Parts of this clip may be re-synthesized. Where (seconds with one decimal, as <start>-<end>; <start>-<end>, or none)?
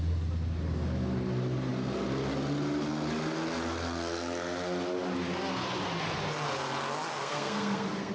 7.1-8.1